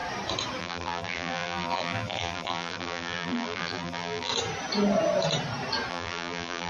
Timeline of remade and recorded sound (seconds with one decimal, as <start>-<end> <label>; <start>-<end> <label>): 0.0-0.6 recorded; 0.6-4.3 remade; 4.3-5.9 recorded; 5.9-6.7 remade